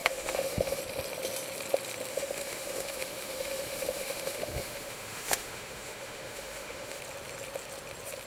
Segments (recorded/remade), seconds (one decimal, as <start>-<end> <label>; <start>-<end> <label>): 0.0-0.8 remade; 0.8-2.1 recorded; 2.1-7.0 remade; 7.0-8.3 recorded